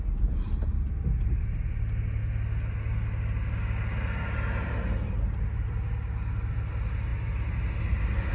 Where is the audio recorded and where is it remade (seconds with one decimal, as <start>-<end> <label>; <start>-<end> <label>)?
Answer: 0.0-8.3 recorded